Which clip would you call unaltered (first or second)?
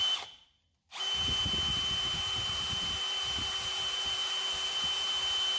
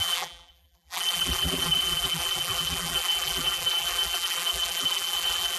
first